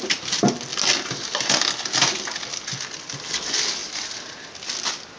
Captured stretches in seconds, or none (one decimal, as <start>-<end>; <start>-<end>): 0.0-5.2